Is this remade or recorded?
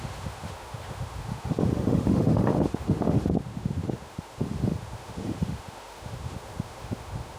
remade